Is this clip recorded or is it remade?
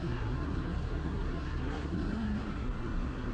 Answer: remade